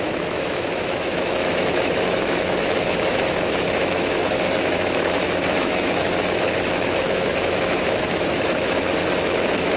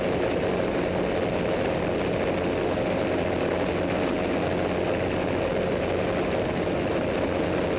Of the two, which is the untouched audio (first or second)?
second